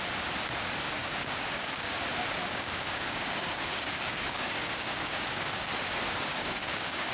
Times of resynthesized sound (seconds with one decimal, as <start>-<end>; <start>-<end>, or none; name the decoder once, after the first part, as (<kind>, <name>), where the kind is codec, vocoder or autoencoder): 1.0-2.0 (codec, DAC); 2.4-5.7; 6.3-7.1